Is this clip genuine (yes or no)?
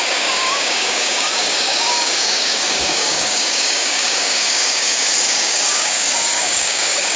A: no